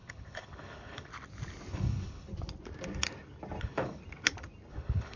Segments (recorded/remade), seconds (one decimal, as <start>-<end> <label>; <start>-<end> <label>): 0.0-1.1 remade; 1.1-1.7 recorded; 1.7-2.3 remade; 2.3-3.6 recorded; 3.6-4.0 remade; 4.0-4.7 recorded; 4.7-5.2 remade